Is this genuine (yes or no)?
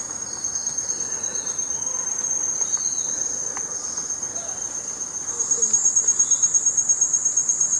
yes